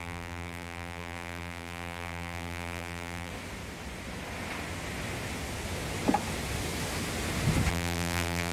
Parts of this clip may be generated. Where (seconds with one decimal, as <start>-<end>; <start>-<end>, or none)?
0.0-3.3; 7.7-8.5